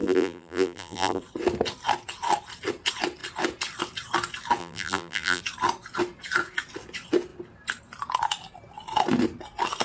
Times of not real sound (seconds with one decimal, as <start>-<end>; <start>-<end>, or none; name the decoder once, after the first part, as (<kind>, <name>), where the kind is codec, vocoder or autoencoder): 0.0-1.2 (vocoder, BigVGAN v2); 4.6-5.4